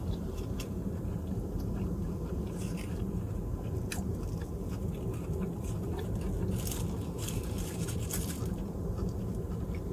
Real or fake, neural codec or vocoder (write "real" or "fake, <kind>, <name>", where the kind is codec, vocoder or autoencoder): real